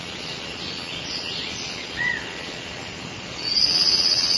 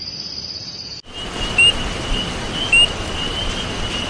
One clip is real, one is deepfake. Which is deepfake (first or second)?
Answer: first